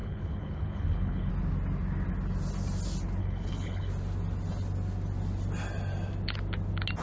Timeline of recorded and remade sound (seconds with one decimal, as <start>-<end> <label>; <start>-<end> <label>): 0.0-1.3 remade; 1.3-3.2 recorded; 3.2-3.9 remade; 3.9-7.0 recorded